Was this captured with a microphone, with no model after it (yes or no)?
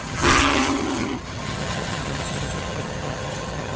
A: no